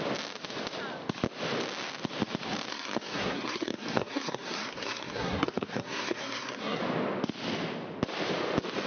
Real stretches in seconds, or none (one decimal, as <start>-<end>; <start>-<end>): 0.0-2.7; 6.8-8.9